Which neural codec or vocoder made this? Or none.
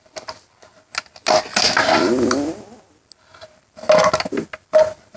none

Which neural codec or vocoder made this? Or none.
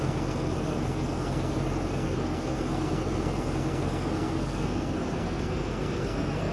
codec, SNAC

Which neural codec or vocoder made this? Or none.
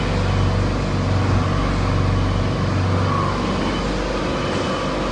none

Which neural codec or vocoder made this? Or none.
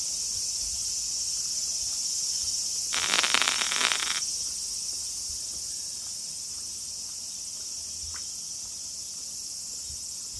none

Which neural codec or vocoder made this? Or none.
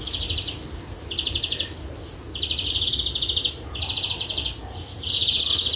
none